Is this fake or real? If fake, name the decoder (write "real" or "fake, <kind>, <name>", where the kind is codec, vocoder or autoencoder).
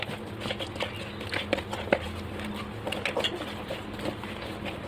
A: real